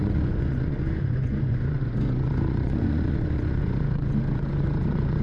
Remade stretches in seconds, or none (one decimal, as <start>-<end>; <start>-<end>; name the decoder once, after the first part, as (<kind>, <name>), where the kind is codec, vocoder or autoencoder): 0.0-5.2 (vocoder, Vocos)